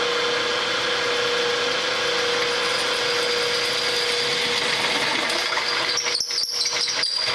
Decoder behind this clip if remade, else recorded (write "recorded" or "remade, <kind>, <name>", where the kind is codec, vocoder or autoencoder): recorded